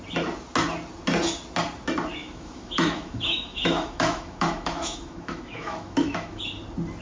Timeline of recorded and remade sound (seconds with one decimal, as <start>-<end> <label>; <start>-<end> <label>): 0.0-2.2 recorded; 2.2-6.4 remade; 6.4-7.0 recorded